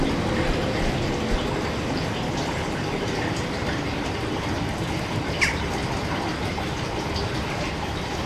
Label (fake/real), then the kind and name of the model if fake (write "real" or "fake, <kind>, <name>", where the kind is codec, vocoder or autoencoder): real